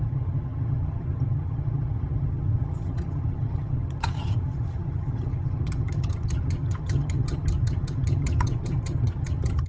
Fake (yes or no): yes